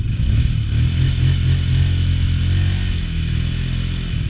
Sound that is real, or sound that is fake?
real